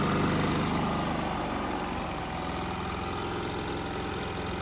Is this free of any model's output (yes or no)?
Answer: yes